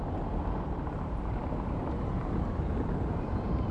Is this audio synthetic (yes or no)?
yes